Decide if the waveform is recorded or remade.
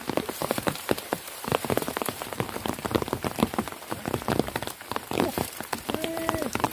remade